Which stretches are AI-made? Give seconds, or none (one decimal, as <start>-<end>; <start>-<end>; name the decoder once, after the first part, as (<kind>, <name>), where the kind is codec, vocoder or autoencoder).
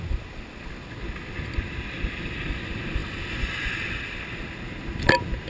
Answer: none